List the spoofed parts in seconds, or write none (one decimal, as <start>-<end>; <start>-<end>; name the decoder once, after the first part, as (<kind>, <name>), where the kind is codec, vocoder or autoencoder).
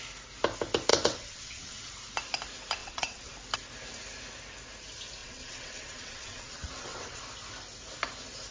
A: 0.9-1.9 (vocoder, WaveNeXt); 2.8-3.3; 5.2-7.2